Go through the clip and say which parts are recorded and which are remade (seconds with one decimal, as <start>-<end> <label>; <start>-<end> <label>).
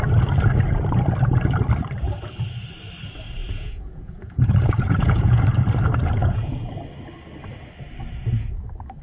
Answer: 0.0-3.4 recorded; 3.4-5.4 remade; 5.4-6.2 recorded; 6.2-6.7 remade; 6.7-9.0 recorded